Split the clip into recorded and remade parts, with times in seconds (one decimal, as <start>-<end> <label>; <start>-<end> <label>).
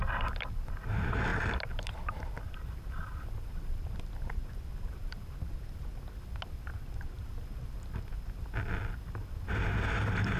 0.0-10.4 recorded